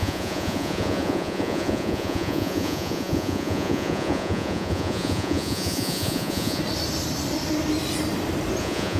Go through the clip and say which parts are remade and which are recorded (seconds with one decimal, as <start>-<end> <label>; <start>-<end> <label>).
0.0-6.6 remade; 6.6-8.6 recorded; 8.6-9.0 remade